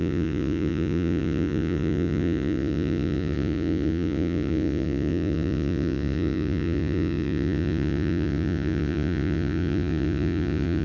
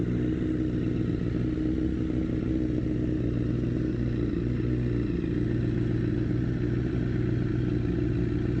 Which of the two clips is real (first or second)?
second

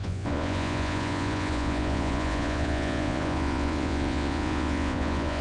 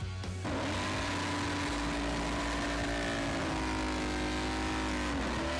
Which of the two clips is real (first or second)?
second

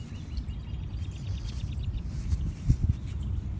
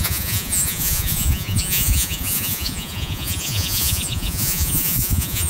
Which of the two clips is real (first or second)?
first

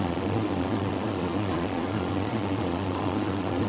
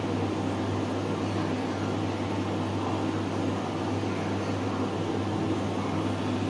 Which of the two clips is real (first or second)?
second